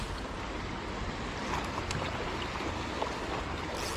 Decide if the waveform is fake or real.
real